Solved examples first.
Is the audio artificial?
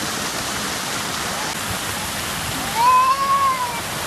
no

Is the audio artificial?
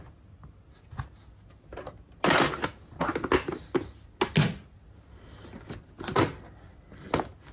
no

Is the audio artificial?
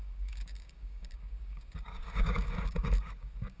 yes